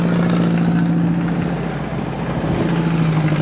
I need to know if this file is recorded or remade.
recorded